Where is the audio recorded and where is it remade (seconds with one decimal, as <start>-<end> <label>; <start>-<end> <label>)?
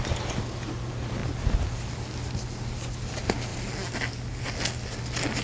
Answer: 0.0-5.4 recorded